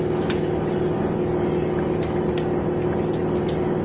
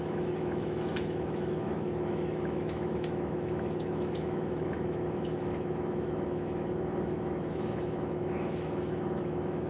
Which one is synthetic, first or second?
second